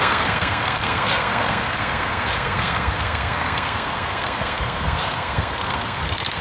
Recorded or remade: remade